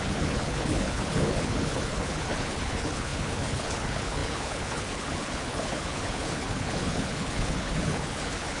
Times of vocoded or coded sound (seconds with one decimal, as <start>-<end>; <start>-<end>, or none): 0.0-8.6